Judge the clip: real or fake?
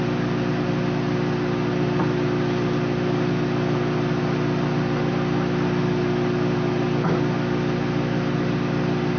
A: real